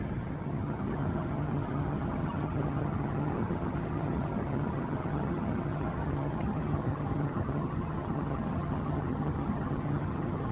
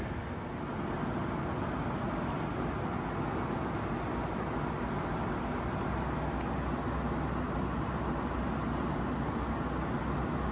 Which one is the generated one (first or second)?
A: first